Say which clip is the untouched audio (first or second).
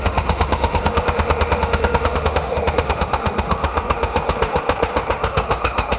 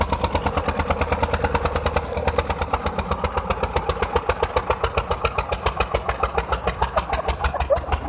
second